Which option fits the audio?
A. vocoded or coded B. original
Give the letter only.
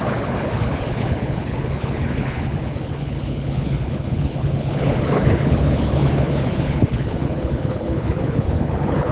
A